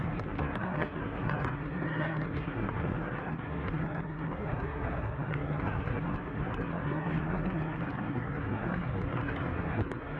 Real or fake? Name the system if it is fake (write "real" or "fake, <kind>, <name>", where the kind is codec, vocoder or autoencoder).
fake, codec, SNAC